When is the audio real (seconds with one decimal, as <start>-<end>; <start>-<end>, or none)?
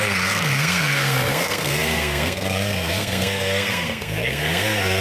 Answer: none